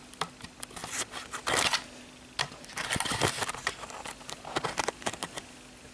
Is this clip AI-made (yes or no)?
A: no